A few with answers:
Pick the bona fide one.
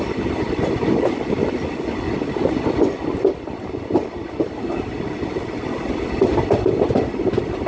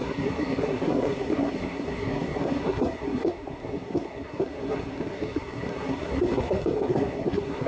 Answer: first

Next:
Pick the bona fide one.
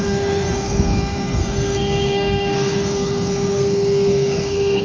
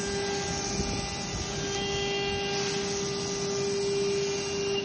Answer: second